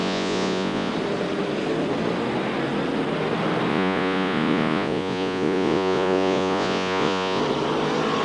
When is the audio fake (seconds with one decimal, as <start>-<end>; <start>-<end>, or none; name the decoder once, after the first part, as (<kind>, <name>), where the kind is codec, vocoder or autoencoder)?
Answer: 0.0-0.9 (vocoder, Vocos); 3.7-7.4